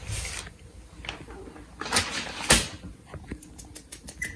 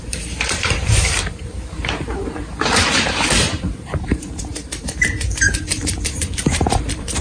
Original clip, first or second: first